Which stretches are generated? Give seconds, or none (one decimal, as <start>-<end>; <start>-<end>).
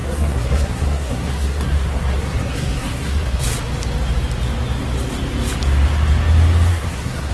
0.0-3.4; 6.7-7.3